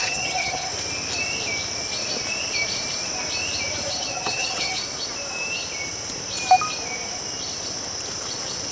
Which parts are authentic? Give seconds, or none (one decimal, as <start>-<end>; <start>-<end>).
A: 0.7-3.9; 4.8-8.7